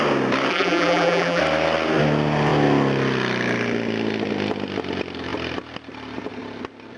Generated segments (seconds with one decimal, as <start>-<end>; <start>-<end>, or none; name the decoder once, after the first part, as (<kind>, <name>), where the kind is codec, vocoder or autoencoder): 0.5-1.4 (vocoder, BigVGAN v2)